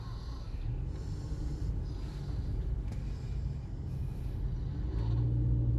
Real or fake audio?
real